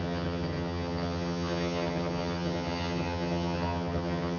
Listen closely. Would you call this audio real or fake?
fake